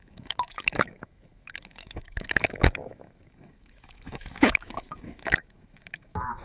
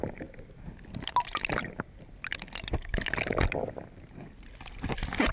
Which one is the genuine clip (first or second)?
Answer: second